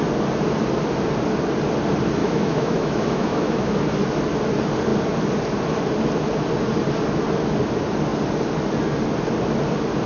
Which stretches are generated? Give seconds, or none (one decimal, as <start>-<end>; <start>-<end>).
2.2-3.8

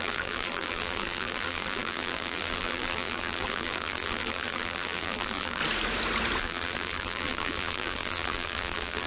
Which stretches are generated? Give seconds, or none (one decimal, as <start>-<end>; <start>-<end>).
0.0-5.6; 6.4-9.1

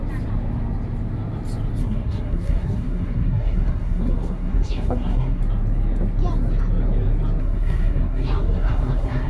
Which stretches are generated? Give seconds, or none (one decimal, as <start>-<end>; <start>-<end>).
1.8-5.4; 7.4-9.3

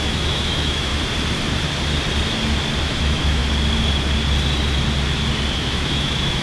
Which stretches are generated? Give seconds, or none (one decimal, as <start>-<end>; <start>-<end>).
0.0-0.9; 2.8-3.4; 5.5-6.4